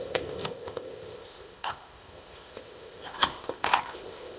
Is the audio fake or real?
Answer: fake